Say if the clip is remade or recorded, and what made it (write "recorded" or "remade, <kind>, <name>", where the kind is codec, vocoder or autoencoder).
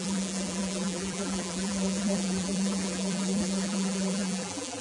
remade, vocoder, BigVGAN v2